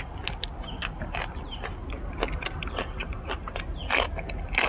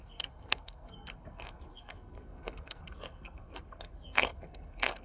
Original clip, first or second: first